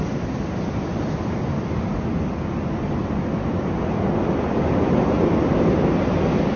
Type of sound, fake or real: real